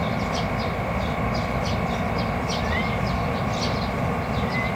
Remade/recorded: recorded